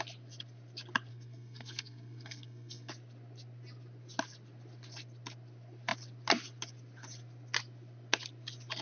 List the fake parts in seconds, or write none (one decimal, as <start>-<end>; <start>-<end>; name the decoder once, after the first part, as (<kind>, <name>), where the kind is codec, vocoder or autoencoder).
1.1-2.9 (codec, SNAC)

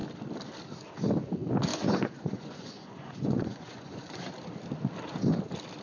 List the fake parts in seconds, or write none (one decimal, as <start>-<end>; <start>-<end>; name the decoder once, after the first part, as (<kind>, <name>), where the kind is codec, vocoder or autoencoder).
1.7-4.3 (vocoder, Vocos)

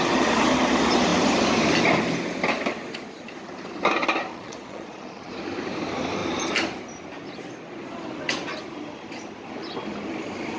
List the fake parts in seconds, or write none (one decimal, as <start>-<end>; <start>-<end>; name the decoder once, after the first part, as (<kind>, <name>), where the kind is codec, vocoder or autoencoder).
4.3-5.3 (vocoder, Vocos)

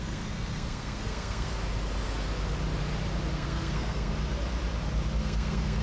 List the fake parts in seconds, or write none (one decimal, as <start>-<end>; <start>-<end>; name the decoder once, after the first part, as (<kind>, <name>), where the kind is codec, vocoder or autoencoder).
0.0-1.5 (codec, SNAC); 3.3-4.1; 5.2-5.8

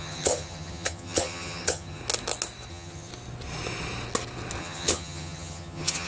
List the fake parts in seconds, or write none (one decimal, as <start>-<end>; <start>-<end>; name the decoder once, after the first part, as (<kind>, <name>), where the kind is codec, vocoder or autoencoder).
0.0-2.0 (vocoder, HiFi-GAN); 2.7-3.1; 4.6-6.1

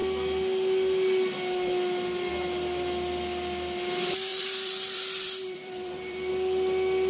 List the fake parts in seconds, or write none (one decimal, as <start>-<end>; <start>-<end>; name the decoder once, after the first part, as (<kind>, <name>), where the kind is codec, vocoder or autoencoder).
4.3-6.3 (vocoder, BigVGAN v2)